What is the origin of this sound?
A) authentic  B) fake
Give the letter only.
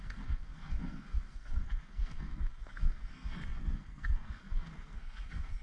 B